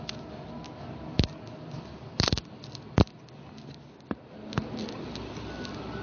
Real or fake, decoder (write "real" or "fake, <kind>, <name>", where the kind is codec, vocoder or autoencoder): real